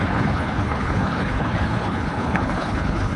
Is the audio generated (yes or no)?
yes